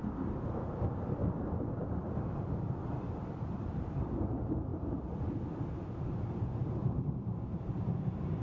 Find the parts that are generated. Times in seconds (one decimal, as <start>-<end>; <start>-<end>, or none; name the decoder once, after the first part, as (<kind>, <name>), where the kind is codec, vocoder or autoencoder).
1.2-4.2 (vocoder, BigVGAN v2); 4.7-5.8; 6.8-7.7